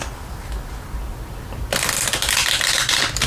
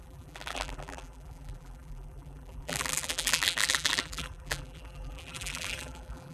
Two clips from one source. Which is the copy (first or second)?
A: second